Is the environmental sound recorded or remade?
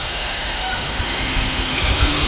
remade